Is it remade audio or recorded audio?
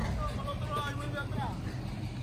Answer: recorded